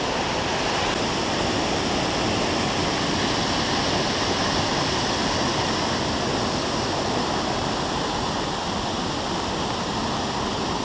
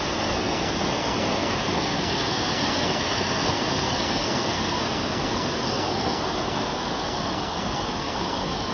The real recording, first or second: first